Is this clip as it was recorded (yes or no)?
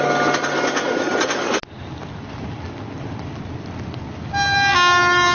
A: yes